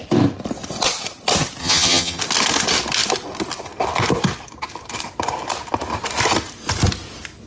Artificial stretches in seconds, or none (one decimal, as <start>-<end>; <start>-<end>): 1.6-2.2